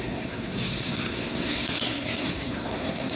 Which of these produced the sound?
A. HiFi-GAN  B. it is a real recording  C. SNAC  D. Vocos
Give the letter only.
C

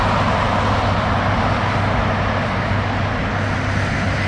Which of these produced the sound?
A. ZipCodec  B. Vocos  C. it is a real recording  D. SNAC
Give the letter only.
C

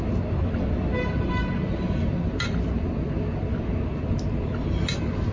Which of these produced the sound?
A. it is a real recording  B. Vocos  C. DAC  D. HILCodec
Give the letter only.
A